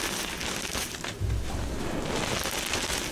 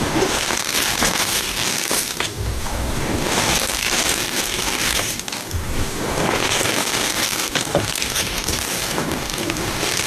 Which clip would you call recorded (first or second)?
first